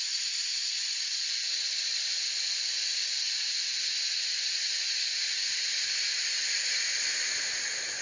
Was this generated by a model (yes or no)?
no